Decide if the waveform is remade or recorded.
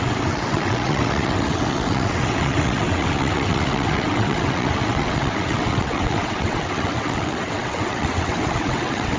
remade